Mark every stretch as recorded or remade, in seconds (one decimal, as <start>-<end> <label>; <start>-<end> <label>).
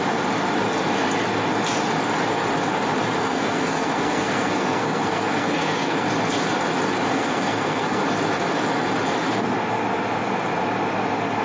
0.0-3.2 recorded; 3.2-6.1 remade; 6.1-7.1 recorded; 7.1-8.0 remade; 8.0-11.4 recorded